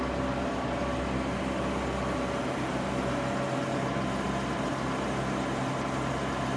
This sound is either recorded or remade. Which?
recorded